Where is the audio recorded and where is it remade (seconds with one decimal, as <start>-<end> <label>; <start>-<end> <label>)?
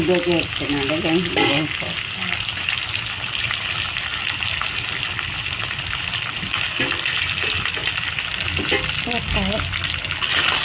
0.0-10.6 recorded